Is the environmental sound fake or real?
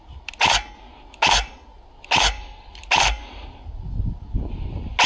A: real